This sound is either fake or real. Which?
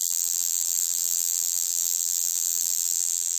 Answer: fake